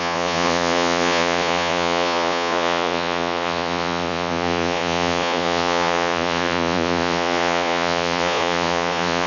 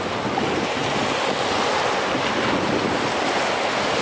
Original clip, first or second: second